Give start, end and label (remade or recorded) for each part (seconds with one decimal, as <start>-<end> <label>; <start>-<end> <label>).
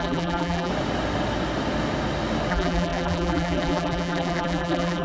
0.0-0.7 remade; 0.7-2.5 recorded; 2.5-5.0 remade